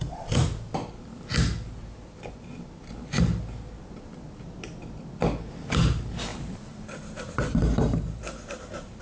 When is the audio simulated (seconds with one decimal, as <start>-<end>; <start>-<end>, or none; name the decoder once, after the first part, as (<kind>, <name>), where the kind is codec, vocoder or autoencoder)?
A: 0.0-0.4 (vocoder, BigVGAN v2); 5.7-8.2